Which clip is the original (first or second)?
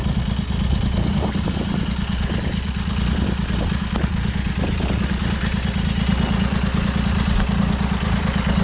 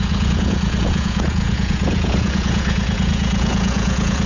first